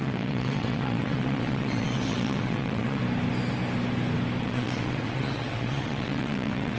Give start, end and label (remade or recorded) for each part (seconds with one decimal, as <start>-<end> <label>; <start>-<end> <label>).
0.0-3.0 remade; 3.0-4.4 recorded; 4.4-6.8 remade